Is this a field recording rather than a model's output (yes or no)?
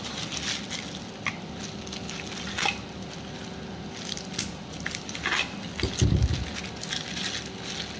yes